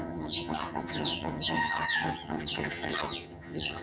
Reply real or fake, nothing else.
fake